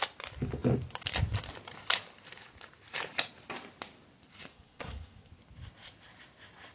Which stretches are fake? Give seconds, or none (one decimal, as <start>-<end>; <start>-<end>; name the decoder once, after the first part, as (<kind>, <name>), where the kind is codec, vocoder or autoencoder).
4.5-5.3 (codec, SNAC)